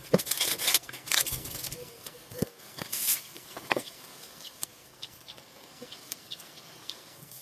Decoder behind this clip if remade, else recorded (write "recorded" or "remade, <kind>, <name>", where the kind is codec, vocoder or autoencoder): remade, codec, SNAC